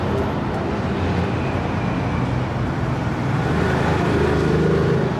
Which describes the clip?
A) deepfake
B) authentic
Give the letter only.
B